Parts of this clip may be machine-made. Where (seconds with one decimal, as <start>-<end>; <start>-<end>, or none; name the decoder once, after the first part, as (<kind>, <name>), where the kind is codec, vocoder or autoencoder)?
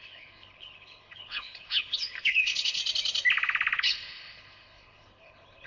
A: 0.0-2.8 (codec, HILCodec); 3.8-5.7